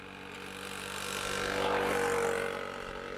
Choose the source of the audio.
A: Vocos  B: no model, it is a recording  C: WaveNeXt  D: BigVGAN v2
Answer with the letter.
B